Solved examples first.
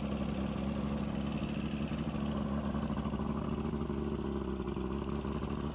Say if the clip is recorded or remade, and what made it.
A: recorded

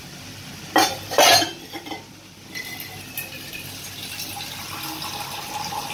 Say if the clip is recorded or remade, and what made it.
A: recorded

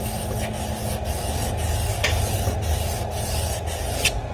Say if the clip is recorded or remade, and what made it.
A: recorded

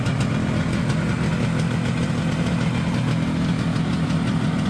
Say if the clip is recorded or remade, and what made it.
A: recorded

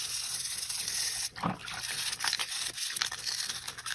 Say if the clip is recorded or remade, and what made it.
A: recorded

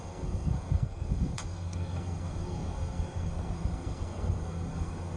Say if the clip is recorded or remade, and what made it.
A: remade, codec, SNAC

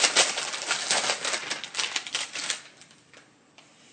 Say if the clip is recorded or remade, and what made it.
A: recorded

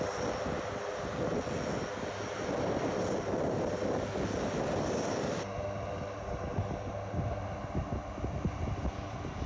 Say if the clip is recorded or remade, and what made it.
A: recorded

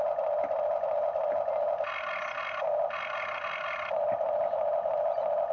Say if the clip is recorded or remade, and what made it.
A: recorded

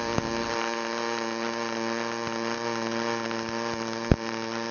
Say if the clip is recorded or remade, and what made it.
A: remade, vocoder, BigVGAN v2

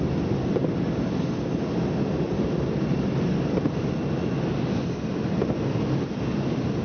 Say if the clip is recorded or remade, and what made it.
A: recorded